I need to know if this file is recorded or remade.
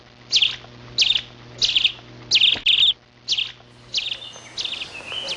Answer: recorded